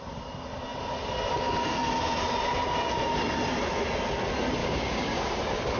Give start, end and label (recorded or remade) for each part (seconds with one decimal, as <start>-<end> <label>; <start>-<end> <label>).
0.0-4.6 recorded; 4.6-5.3 remade; 5.3-5.8 recorded

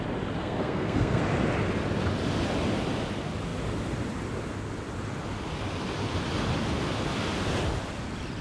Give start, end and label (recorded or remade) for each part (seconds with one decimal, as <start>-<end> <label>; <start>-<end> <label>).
0.0-0.4 recorded; 0.4-1.2 remade; 1.2-8.4 recorded

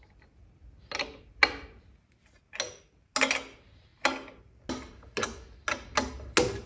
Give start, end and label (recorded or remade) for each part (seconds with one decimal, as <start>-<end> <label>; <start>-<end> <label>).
0.0-6.7 recorded

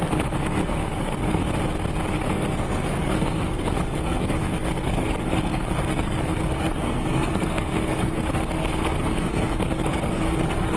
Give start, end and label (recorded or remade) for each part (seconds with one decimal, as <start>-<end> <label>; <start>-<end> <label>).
0.0-1.4 remade; 1.4-2.1 recorded; 2.1-10.8 remade

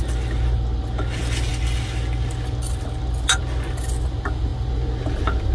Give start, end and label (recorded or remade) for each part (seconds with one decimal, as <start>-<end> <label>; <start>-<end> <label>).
0.0-5.5 recorded

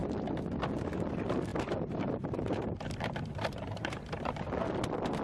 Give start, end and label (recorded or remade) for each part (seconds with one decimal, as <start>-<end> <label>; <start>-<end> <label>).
0.0-1.5 recorded; 1.5-4.6 remade; 4.6-5.2 recorded